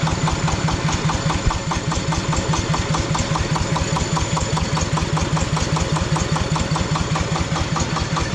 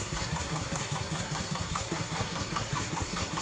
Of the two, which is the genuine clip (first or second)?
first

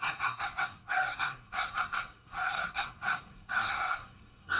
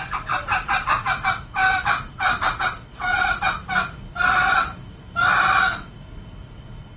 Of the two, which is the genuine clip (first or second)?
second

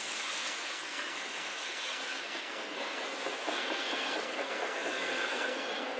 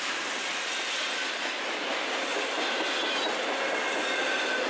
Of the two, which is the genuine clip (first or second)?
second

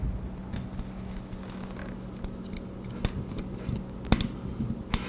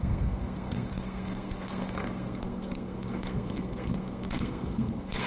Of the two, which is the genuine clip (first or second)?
first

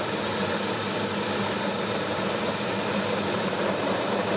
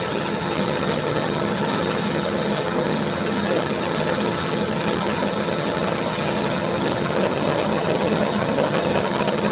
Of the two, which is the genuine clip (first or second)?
first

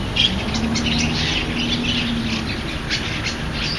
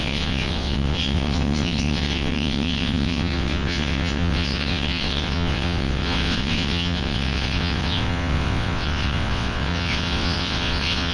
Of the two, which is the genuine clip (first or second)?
first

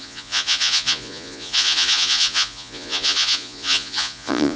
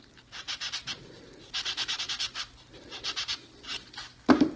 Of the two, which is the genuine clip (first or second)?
second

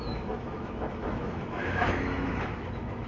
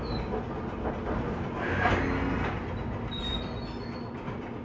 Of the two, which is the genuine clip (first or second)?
second